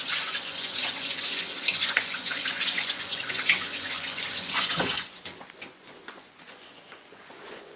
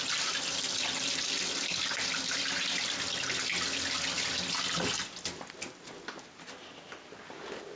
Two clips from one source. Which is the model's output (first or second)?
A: first